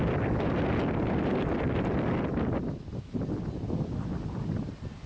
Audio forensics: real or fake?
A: real